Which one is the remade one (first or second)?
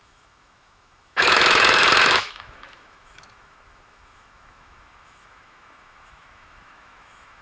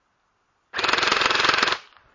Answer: first